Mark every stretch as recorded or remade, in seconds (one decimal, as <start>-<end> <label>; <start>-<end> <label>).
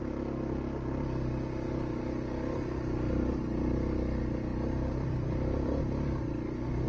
0.0-4.5 recorded; 4.5-5.8 remade; 5.8-6.9 recorded